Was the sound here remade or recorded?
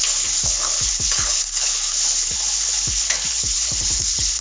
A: remade